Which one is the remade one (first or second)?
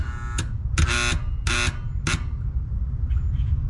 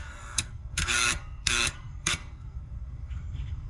second